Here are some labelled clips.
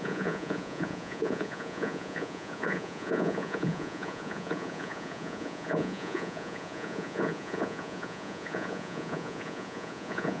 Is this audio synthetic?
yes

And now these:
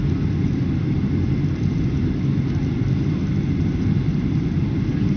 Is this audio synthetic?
no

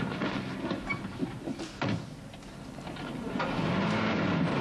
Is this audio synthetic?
no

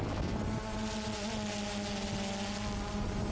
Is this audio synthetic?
no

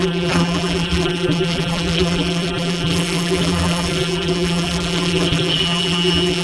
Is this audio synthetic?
yes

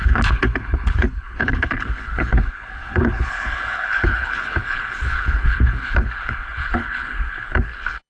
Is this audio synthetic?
yes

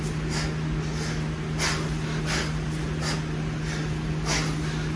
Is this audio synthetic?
no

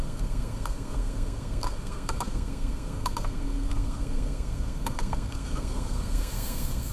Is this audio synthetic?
yes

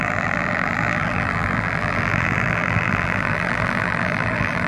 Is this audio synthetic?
yes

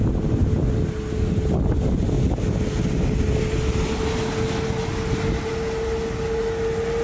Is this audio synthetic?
no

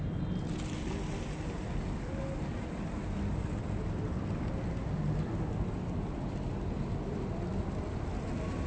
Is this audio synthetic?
no